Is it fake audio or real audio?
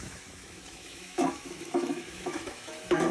fake